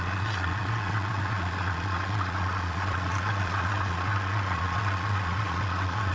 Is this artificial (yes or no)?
yes